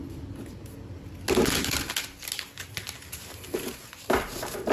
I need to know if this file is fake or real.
real